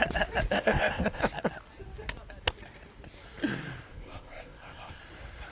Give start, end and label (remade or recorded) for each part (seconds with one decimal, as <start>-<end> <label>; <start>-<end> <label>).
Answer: 0.0-0.5 recorded; 0.5-1.2 remade; 1.2-3.9 recorded; 3.9-5.0 remade; 5.0-5.5 recorded